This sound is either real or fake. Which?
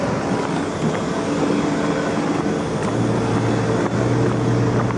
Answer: real